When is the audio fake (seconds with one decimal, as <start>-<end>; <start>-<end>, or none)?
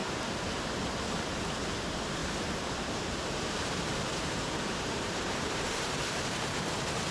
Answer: 0.0-0.8; 2.2-6.5